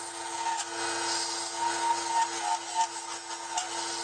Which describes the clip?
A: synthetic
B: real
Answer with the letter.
B